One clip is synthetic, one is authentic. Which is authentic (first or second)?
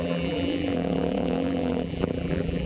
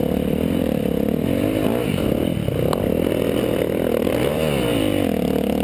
second